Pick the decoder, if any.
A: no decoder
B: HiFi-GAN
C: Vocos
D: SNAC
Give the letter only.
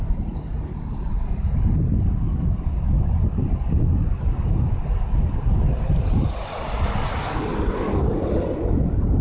A